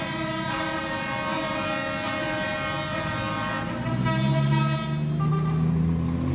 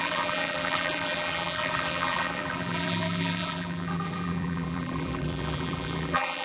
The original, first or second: first